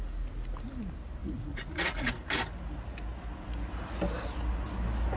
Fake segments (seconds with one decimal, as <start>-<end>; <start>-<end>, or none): 1.2-2.1

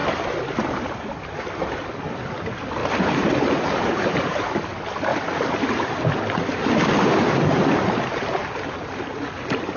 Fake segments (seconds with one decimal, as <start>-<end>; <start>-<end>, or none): 0.0-1.2; 2.8-4.5